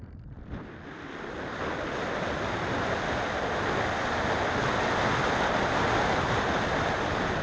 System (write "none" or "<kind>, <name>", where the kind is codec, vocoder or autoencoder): none